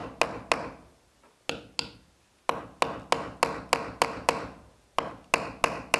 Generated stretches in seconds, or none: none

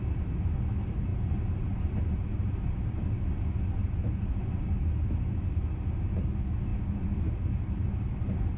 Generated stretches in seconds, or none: 1.1-2.9

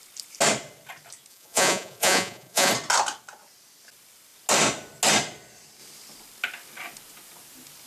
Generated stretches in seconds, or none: 1.3-2.7

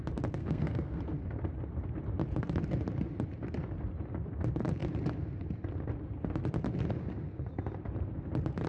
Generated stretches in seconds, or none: 0.4-1.0

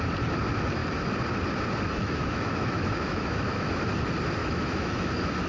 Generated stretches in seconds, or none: 2.0-3.9; 4.4-5.1

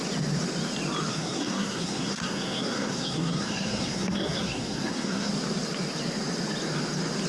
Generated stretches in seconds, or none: 1.1-5.3

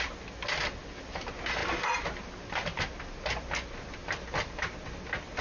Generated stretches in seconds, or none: none

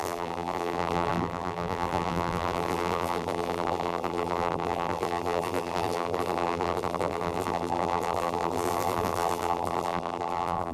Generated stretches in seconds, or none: 0.0-10.7